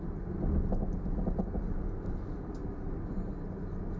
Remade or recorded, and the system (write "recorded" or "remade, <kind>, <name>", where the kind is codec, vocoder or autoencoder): recorded